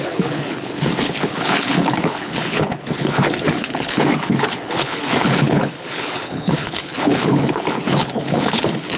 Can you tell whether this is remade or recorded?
remade